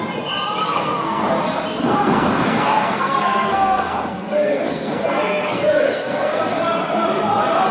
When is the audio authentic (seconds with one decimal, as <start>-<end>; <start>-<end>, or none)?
0.0-0.6; 1.3-1.8; 6.4-7.7